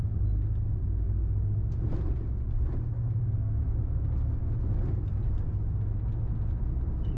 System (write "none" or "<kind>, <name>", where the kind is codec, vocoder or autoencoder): none